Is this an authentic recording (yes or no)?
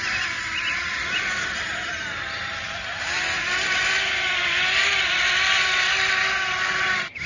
yes